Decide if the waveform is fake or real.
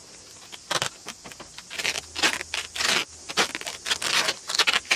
real